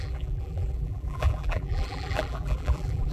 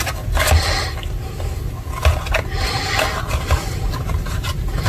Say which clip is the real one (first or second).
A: second